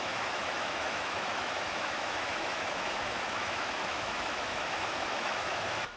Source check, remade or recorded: remade